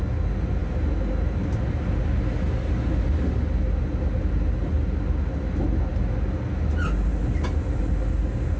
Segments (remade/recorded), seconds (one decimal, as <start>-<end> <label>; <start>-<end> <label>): 0.0-8.6 recorded